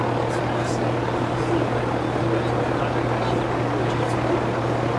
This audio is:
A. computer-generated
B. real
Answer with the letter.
B